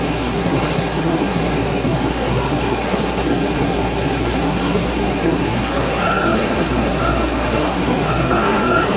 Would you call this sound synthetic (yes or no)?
yes